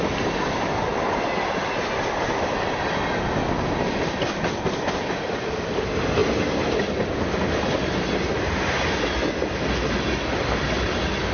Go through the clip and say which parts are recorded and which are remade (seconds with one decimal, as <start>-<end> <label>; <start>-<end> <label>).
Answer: 0.0-6.2 remade; 6.2-9.9 recorded; 9.9-11.3 remade